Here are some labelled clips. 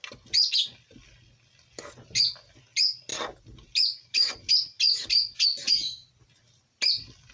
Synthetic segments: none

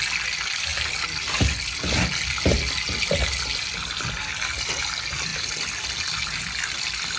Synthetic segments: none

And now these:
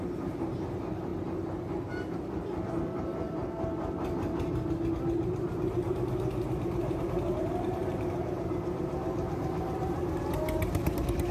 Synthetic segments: 0.0-1.1 (vocoder, BigVGAN v2); 4.9-11.3

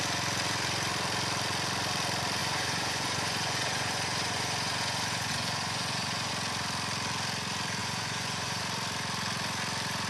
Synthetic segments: 2.4-6.3 (vocoder, Vocos); 7.8-8.6

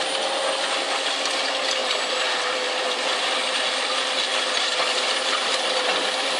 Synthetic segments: 1.8-3.9 (vocoder, BigVGAN v2); 4.3-6.4

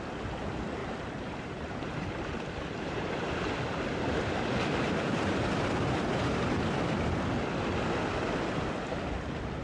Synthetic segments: 0.8-3.4 (vocoder, BigVGAN v2)

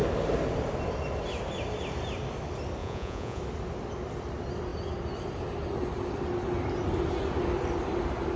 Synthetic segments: 2.8-3.4 (vocoder, Vocos)